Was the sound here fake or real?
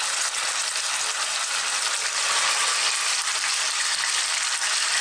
real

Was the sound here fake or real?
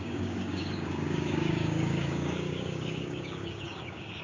fake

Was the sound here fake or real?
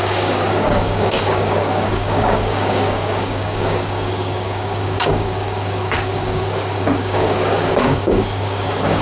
fake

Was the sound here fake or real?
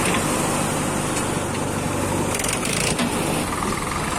real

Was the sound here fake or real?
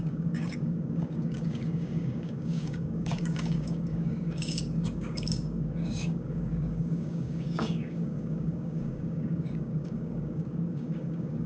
fake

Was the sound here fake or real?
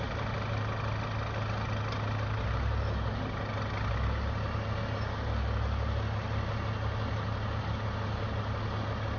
real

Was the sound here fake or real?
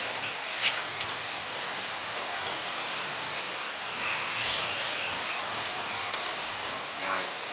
fake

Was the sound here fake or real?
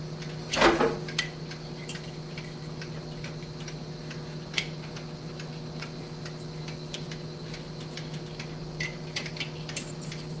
real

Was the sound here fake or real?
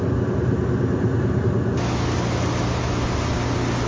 real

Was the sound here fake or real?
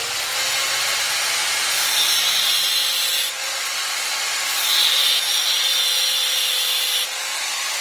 real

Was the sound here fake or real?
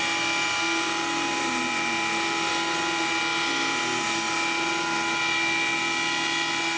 real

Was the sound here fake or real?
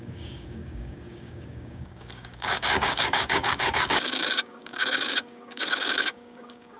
fake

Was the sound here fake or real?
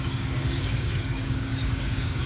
fake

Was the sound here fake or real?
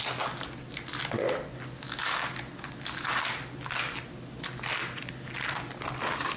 real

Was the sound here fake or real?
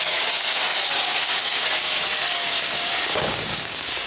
fake